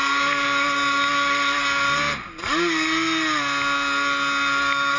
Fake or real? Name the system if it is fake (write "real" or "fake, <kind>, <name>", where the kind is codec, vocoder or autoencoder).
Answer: real